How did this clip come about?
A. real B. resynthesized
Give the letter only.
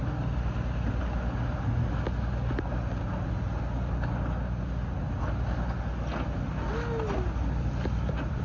A